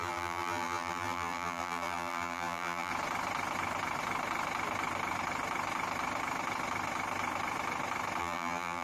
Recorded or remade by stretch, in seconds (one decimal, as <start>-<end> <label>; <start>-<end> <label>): 0.0-2.9 remade; 2.9-8.2 recorded; 8.2-8.8 remade